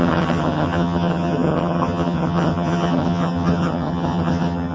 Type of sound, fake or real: fake